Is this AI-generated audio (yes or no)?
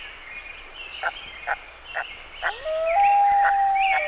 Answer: no